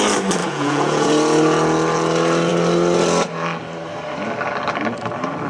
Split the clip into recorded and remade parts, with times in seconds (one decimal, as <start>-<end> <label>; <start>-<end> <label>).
0.0-0.4 recorded; 0.4-1.1 remade; 1.1-5.5 recorded